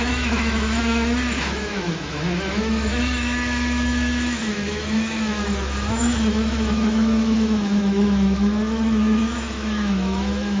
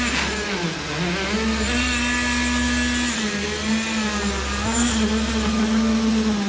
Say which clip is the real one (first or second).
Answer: second